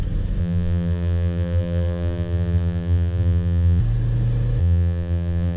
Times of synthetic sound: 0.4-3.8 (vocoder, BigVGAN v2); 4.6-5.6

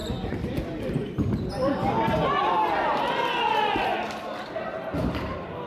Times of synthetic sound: none

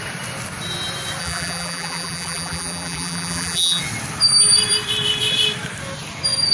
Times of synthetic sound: 1.2-3.8 (vocoder, BigVGAN v2)

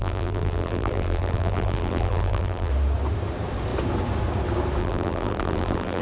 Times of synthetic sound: 0.0-2.7 (vocoder, BigVGAN v2); 4.8-6.0

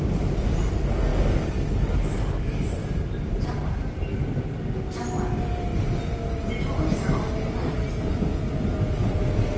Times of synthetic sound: 2.8-3.6 (vocoder, BigVGAN v2)

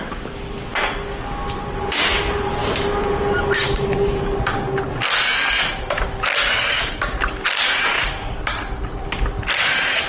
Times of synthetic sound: none